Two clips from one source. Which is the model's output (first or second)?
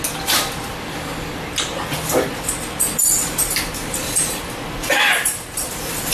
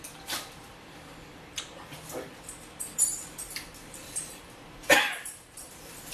second